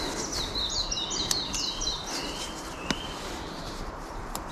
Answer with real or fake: real